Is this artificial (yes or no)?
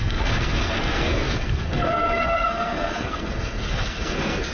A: yes